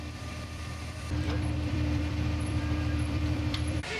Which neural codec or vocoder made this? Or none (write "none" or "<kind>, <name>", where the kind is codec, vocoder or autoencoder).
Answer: vocoder, BigVGAN v2